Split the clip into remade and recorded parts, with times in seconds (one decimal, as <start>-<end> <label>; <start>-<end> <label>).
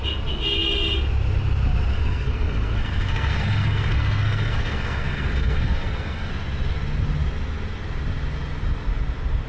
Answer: 0.0-1.9 recorded; 1.9-6.3 remade; 6.3-9.5 recorded